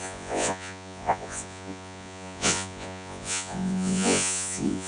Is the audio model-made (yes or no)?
yes